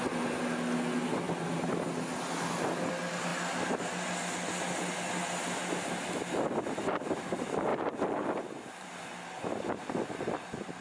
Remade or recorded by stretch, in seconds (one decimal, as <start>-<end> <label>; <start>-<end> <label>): 0.0-7.7 recorded; 7.7-8.9 remade; 8.9-10.8 recorded